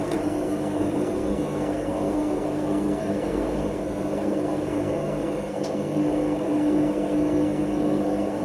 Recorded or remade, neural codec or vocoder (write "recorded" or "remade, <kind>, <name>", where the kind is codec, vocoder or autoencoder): remade, codec, SNAC